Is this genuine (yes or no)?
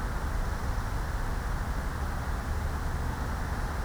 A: yes